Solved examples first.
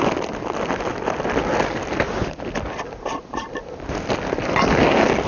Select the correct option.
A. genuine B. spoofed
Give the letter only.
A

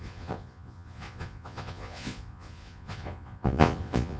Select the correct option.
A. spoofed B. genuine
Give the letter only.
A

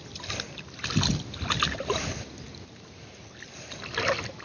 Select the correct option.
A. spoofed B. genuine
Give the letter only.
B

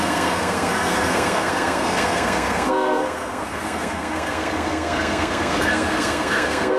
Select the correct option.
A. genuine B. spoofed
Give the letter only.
B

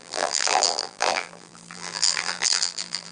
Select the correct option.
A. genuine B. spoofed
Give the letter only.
B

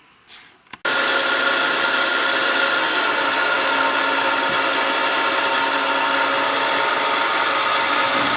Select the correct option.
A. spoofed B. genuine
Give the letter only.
B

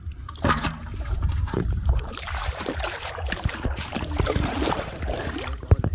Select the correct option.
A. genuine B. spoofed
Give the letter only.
B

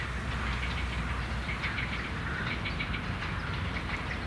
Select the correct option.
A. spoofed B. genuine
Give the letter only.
B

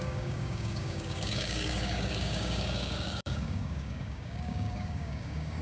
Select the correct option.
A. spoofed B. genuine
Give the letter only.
A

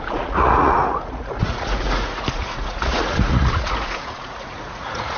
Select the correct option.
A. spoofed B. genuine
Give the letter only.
A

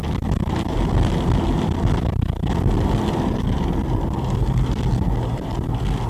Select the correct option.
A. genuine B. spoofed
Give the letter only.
A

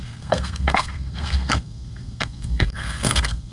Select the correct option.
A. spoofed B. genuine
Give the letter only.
A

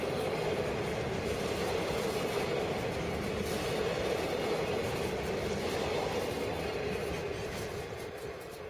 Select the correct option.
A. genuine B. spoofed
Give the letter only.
A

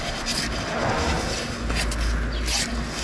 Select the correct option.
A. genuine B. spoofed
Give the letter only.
A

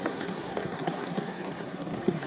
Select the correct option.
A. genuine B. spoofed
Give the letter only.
B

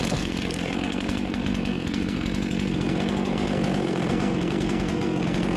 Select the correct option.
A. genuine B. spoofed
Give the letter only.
B